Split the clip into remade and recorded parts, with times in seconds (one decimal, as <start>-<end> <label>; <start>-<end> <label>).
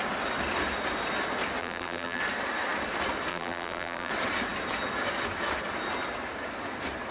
0.0-1.6 recorded; 1.6-2.2 remade; 2.2-3.3 recorded; 3.3-4.1 remade; 4.1-7.1 recorded